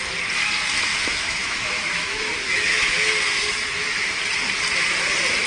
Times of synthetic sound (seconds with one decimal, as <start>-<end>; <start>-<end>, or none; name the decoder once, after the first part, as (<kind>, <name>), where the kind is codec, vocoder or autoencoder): 0.9-4.2 (autoencoder, DAC-VAE)